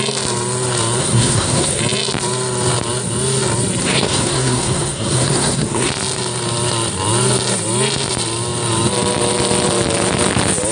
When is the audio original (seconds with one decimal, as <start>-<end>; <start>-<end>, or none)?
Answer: 0.0-1.0; 1.8-3.8; 5.9-10.7